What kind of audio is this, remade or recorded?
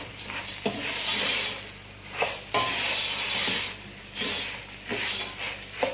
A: recorded